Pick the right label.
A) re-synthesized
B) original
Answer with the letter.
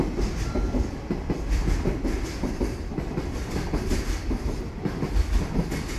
B